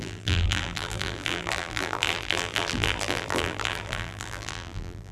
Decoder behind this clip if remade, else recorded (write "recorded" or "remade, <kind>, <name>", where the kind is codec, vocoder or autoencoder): remade, vocoder, BigVGAN v2